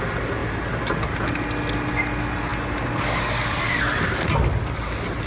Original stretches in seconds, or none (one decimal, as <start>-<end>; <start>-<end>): 0.0-5.3